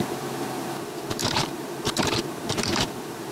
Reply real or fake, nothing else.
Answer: fake